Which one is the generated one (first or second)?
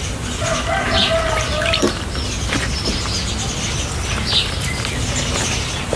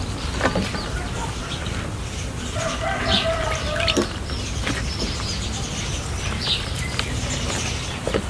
second